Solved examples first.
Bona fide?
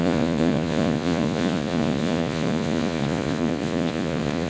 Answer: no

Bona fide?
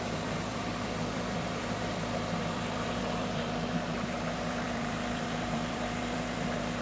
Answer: no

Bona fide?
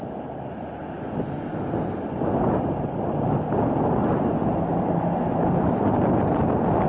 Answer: yes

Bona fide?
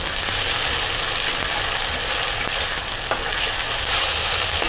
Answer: yes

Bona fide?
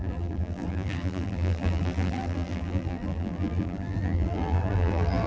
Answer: no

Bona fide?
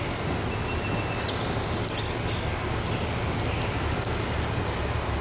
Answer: yes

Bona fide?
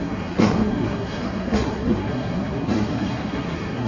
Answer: no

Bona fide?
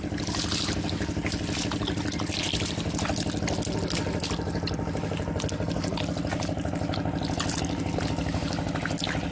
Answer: yes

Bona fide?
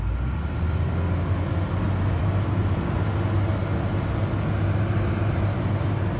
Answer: yes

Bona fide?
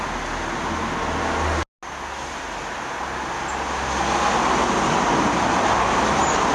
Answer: yes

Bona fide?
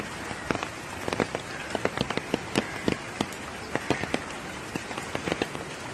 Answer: yes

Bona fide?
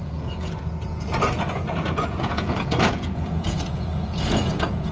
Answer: no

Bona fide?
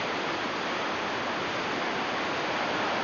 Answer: yes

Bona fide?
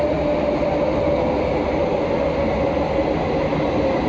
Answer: yes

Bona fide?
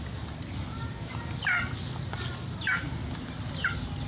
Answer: yes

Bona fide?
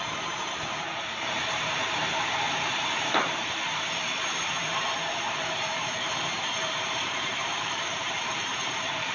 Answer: no